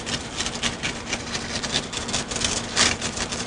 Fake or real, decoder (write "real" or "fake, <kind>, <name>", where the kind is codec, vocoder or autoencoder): fake, vocoder, BigVGAN v2